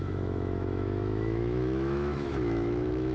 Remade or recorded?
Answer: remade